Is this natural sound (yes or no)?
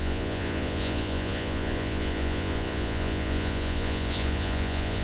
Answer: no